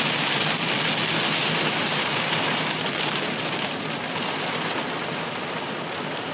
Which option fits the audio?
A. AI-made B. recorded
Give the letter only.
B